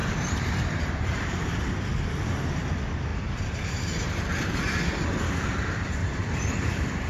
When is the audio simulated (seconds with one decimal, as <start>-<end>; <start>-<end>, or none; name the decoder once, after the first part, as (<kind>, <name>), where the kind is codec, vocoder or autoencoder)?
0.0-1.5 (vocoder, BigVGAN v2); 3.1-4.3; 6.0-7.1